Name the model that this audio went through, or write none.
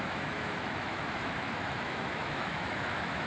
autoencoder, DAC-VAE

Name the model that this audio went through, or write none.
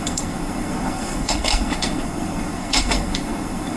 codec, SNAC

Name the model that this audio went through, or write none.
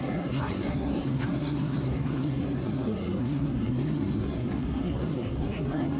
codec, SNAC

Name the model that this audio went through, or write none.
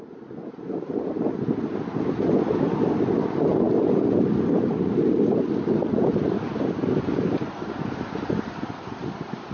none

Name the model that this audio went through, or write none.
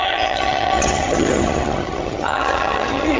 vocoder, HiFi-GAN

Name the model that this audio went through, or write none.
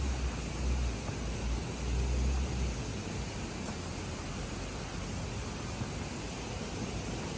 none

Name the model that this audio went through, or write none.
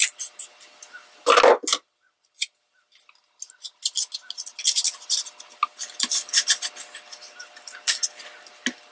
none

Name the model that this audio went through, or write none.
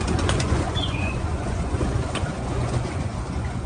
vocoder, Vocos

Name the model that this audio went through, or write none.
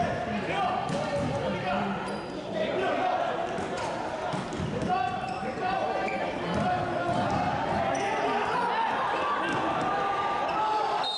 none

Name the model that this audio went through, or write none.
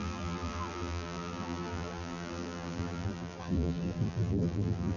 vocoder, BigVGAN v2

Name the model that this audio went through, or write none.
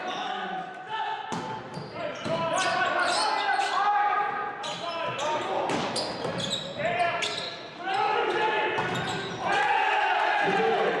none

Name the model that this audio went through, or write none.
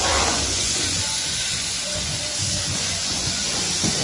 vocoder, Vocos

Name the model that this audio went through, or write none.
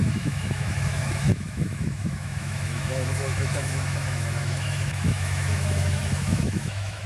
autoencoder, DAC-VAE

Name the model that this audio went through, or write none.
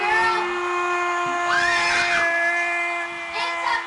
none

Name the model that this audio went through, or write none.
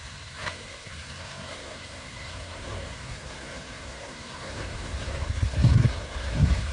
codec, SNAC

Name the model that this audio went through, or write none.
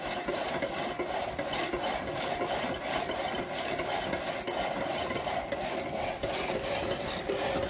none